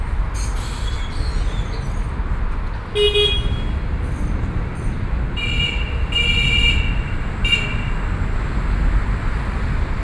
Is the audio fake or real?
real